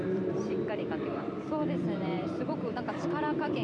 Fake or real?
fake